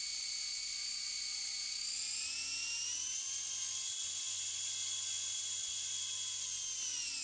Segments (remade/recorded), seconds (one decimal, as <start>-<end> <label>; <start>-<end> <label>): 0.0-4.0 recorded; 4.0-5.9 remade; 5.9-7.2 recorded